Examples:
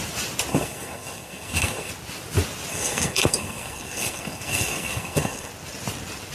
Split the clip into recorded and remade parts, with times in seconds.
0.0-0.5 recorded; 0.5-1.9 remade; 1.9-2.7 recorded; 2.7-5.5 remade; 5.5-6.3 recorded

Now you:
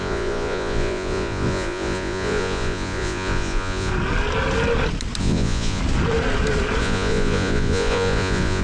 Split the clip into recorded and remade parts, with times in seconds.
0.0-3.9 remade; 3.9-5.2 recorded; 5.2-5.8 remade; 5.8-6.8 recorded; 6.8-8.6 remade

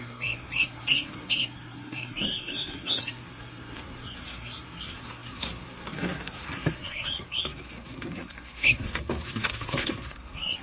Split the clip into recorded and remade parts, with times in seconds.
0.0-10.6 remade

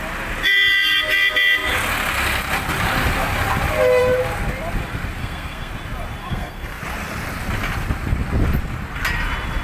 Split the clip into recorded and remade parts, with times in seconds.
0.0-5.2 recorded; 5.2-5.7 remade; 5.7-6.2 recorded; 6.2-6.8 remade; 6.8-9.6 recorded

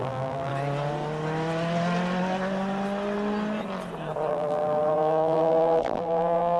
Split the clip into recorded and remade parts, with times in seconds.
0.0-0.5 remade; 0.5-4.3 recorded; 4.3-6.6 remade

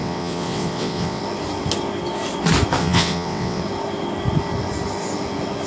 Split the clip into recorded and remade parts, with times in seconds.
0.0-1.2 remade; 1.2-2.8 recorded; 2.8-3.6 remade; 3.6-5.7 recorded

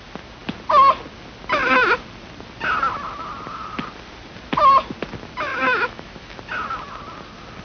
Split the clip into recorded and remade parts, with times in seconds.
0.0-5.5 recorded; 5.5-6.4 remade; 6.4-7.6 recorded

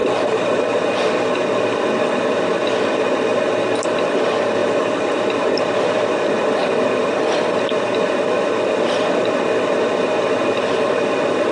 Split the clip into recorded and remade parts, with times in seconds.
0.0-0.6 remade; 0.6-4.6 recorded; 4.6-5.1 remade; 5.1-11.5 recorded